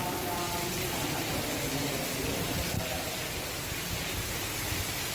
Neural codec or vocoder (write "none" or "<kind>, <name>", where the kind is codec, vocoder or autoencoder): none